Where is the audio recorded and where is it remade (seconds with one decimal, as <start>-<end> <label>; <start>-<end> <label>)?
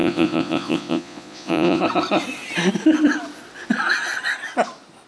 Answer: 0.0-1.8 remade; 1.8-5.1 recorded